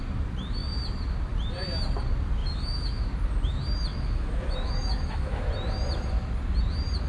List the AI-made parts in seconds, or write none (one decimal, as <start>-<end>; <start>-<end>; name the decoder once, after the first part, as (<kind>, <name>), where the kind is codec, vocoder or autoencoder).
2.4-3.1 (autoencoder, DAC-VAE); 3.9-5.5